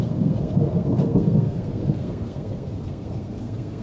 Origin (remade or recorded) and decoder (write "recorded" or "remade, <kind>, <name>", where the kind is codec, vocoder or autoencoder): remade, codec, SNAC